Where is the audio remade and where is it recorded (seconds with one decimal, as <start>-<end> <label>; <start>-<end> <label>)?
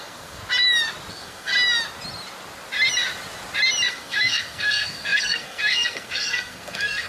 0.0-0.4 remade; 0.4-1.1 recorded; 1.1-1.5 remade; 1.5-3.9 recorded; 3.9-7.1 remade